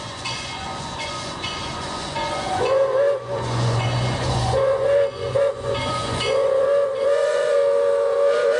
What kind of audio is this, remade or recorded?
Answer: remade